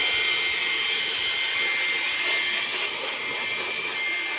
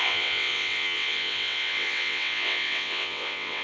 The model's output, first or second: second